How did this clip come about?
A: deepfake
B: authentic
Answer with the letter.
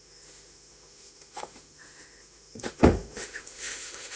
A